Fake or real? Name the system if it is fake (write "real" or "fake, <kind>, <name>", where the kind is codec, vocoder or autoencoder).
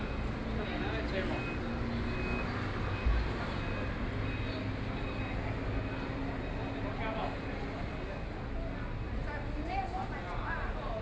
real